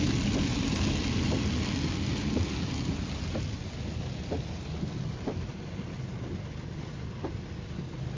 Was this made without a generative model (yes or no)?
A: yes